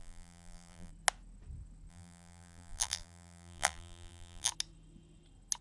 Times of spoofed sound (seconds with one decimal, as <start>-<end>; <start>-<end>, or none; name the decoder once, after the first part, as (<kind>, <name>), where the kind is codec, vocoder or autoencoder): 0.0-0.9 (vocoder, BigVGAN v2); 1.9-4.5